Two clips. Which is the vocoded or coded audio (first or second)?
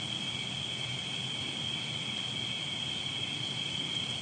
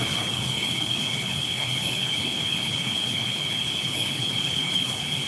second